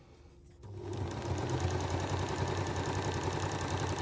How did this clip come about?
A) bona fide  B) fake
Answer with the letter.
A